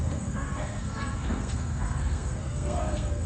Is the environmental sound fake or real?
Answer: fake